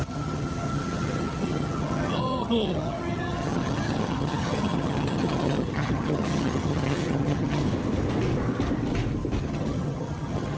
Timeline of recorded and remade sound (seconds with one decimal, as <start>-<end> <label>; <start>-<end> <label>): 0.0-7.6 remade; 7.6-9.4 recorded; 9.4-10.6 remade